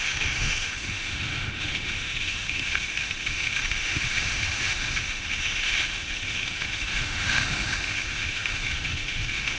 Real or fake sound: fake